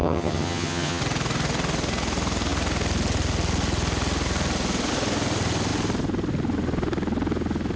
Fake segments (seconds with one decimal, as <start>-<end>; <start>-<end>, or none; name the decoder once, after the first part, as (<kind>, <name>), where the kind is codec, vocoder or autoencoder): 0.0-1.0 (vocoder, HiFi-GAN)